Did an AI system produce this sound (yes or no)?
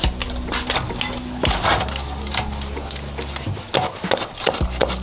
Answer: no